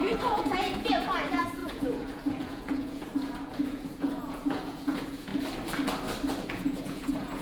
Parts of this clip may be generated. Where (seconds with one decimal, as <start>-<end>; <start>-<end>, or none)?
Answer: 0.0-5.3; 6.5-7.4